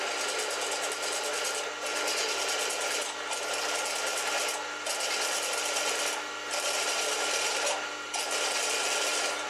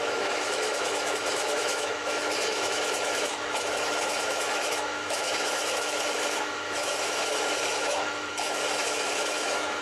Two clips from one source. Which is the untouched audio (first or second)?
first